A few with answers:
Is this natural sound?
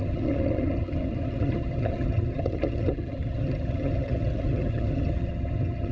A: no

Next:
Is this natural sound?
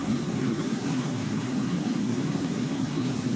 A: no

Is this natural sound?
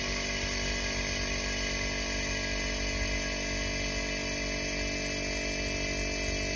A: yes